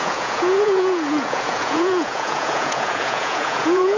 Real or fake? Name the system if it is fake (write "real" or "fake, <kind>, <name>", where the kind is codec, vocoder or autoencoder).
fake, vocoder, Vocos